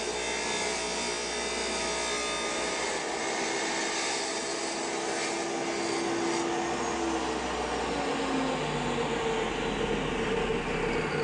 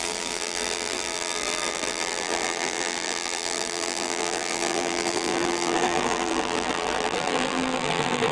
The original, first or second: first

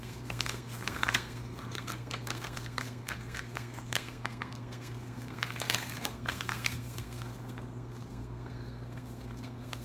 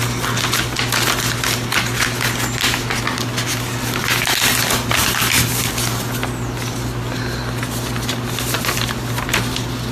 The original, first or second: second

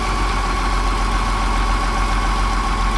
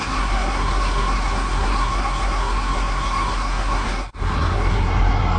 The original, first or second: first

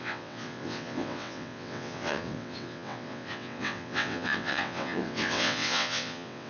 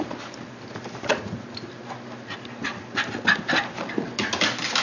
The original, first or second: second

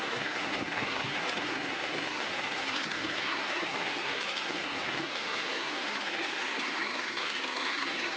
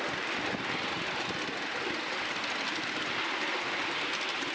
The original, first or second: second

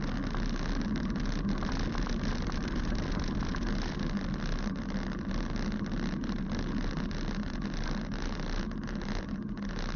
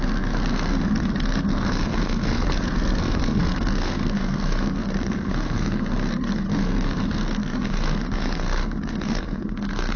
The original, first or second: first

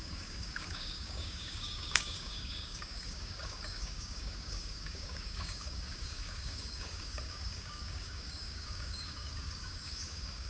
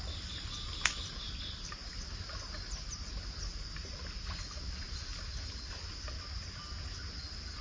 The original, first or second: second